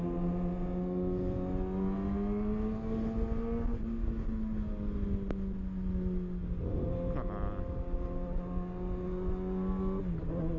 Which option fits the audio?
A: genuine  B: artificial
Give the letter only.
A